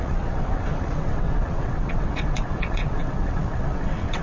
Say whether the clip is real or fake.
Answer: fake